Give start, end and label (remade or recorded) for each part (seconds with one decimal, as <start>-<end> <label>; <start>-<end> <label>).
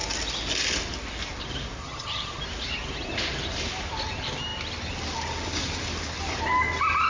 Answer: 0.0-1.8 recorded; 1.8-2.4 remade; 2.4-7.1 recorded